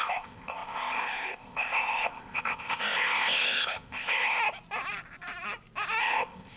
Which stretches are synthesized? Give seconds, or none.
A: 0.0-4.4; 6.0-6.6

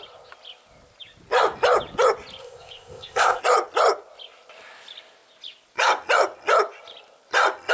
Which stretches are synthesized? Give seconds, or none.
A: 2.4-3.4

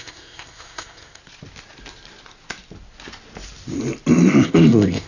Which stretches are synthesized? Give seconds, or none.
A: 0.0-1.2; 4.3-5.1